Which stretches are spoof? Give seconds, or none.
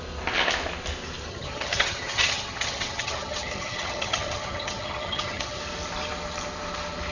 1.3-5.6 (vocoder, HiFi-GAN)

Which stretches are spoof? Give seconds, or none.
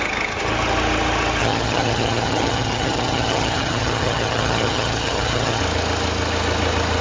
1.4-5.6 (vocoder, HiFi-GAN)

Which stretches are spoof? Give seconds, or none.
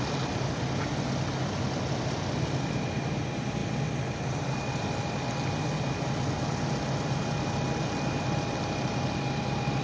none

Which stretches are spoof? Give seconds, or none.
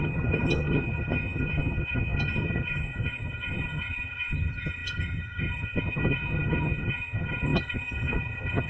0.0-8.7 (vocoder, HiFi-GAN)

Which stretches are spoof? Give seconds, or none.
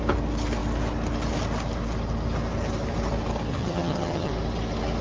3.5-4.3 (vocoder, HiFi-GAN)